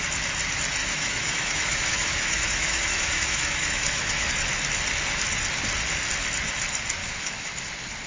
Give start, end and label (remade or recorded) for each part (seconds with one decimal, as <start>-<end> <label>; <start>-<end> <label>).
0.0-0.8 recorded; 0.8-4.3 remade; 4.3-7.0 recorded; 7.0-7.5 remade; 7.5-8.1 recorded